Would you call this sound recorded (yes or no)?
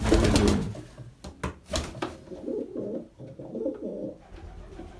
yes